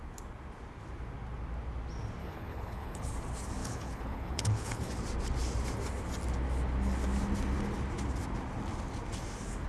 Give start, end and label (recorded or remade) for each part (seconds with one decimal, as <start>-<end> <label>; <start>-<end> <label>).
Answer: 0.0-2.2 recorded; 2.2-3.1 remade; 3.1-3.6 recorded; 3.6-5.0 remade; 5.0-9.7 recorded